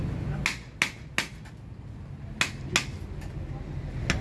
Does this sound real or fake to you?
real